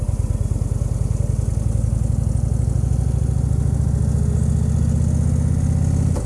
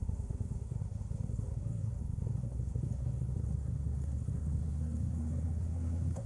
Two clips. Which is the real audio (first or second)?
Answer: first